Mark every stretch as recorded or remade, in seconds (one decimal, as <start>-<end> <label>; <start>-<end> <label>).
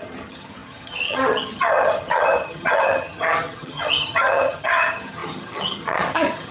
0.0-6.5 remade